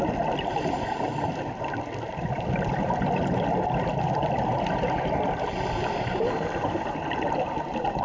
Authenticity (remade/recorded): recorded